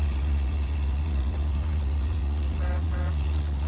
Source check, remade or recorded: remade